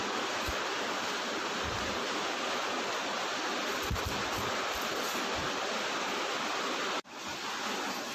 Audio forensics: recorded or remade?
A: recorded